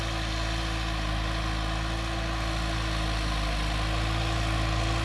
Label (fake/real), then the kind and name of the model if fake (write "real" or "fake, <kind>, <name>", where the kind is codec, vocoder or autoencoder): real